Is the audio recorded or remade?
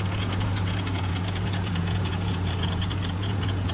remade